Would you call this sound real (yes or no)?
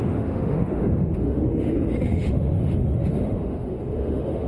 no